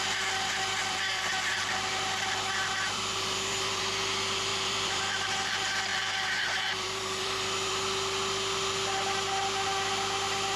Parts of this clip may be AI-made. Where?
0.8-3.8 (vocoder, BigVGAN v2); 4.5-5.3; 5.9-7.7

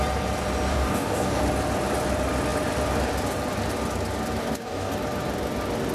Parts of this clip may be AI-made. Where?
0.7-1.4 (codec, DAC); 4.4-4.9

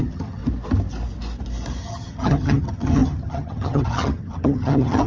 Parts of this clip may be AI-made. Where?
0.0-0.4 (vocoder, HiFi-GAN); 1.8-5.1

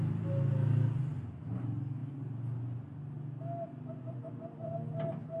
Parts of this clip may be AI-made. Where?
none

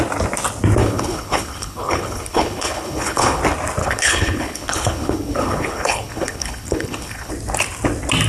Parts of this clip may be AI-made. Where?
0.8-3.4 (codec, HILCodec); 3.8-7.3

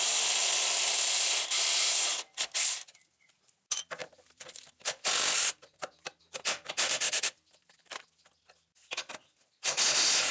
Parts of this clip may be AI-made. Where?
0.4-2.0 (vocoder, BigVGAN v2); 4.0-7.8

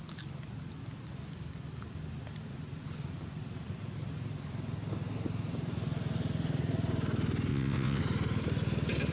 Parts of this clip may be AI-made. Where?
7.5-8.0 (vocoder, WaveNeXt)

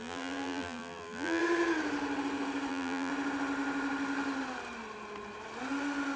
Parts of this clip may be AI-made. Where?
0.0-1.4 (vocoder, BigVGAN v2); 2.7-3.1